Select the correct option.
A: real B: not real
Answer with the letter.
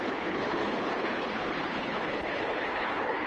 B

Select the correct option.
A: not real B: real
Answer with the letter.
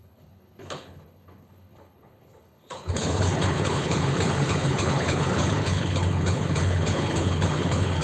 A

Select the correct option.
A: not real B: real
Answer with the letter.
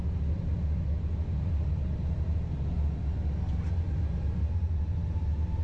B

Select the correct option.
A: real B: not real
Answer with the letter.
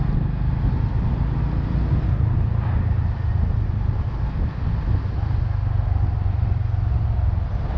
A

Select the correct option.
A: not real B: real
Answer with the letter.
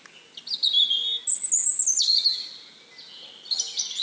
B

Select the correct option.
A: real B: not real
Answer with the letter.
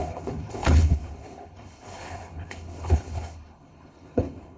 B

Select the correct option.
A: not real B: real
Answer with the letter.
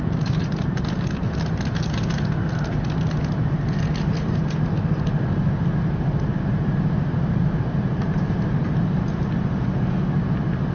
B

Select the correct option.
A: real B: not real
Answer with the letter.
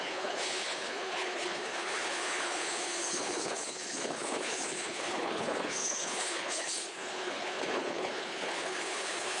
B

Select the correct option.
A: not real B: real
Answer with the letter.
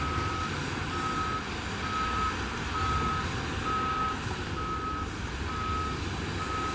B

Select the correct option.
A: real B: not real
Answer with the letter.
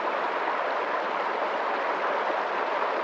A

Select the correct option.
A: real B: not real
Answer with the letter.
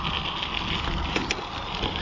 A